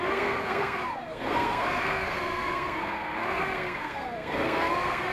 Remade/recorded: remade